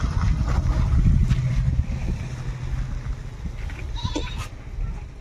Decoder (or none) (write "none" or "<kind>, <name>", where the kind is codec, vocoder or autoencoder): none